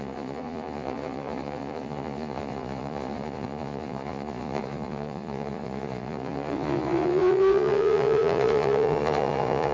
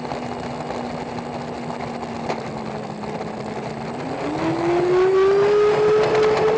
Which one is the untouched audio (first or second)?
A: second